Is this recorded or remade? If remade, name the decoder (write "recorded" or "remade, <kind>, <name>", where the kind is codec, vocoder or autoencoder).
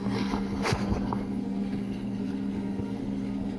remade, codec, SNAC